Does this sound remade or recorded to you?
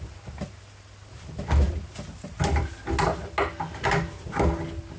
recorded